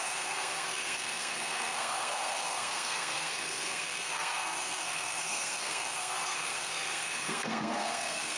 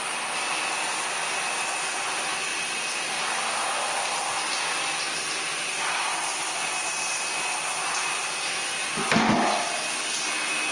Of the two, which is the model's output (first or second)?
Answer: first